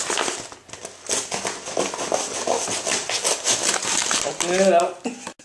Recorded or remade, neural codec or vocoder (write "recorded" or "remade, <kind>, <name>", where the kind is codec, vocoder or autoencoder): recorded